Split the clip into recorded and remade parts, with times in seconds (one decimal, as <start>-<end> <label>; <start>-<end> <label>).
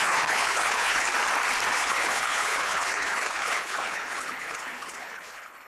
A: 0.0-1.1 remade; 1.1-1.7 recorded; 1.7-5.7 remade